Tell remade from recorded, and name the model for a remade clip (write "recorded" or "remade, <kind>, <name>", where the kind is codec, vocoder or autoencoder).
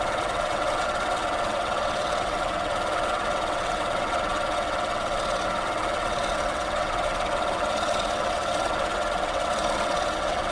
remade, vocoder, WaveNeXt